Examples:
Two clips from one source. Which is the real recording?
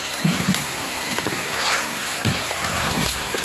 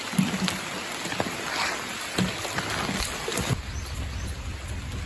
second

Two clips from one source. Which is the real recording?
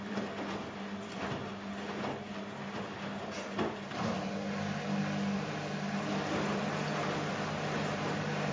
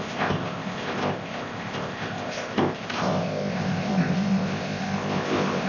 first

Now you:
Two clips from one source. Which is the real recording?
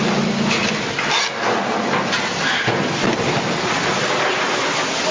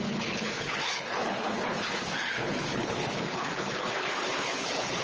first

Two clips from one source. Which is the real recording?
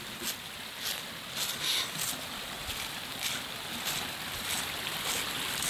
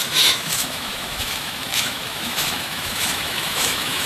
first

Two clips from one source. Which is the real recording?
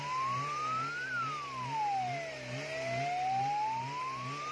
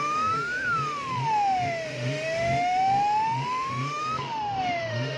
first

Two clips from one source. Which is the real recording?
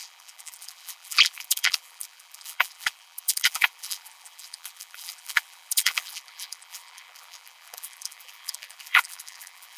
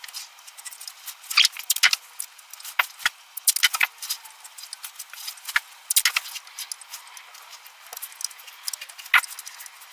second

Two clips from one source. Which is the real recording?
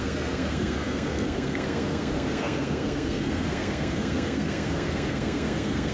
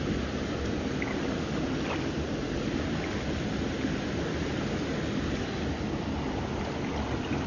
second